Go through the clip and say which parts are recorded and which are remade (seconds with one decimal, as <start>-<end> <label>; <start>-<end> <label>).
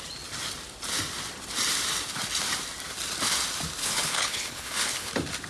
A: 0.0-3.8 recorded; 3.8-5.1 remade; 5.1-5.5 recorded